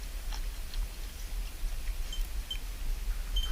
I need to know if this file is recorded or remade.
recorded